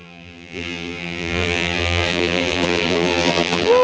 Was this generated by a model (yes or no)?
yes